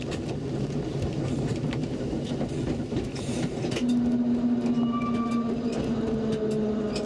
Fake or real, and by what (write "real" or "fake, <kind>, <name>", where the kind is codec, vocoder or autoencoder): real